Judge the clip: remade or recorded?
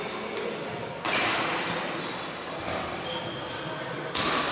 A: recorded